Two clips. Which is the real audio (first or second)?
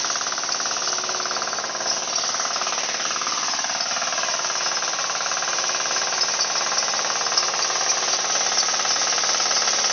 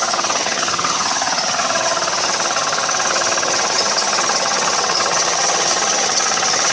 first